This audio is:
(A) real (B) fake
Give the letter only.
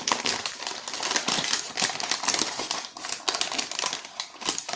A